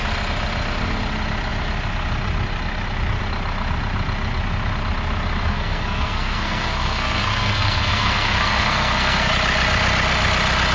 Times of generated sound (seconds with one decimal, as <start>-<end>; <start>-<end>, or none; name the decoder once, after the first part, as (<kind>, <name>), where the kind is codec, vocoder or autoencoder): 5.5-9.3 (codec, SNAC)